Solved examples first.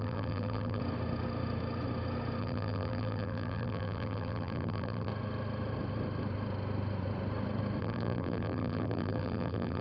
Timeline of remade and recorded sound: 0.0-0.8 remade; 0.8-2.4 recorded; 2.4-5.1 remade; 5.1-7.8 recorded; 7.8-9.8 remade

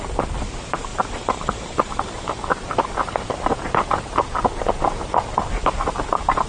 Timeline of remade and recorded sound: 0.0-6.5 recorded